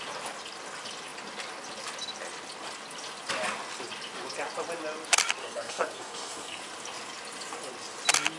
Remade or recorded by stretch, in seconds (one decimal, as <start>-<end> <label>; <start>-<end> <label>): 0.0-5.4 recorded; 5.4-6.6 remade; 6.6-8.4 recorded